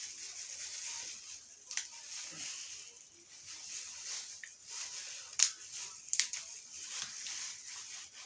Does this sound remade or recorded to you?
recorded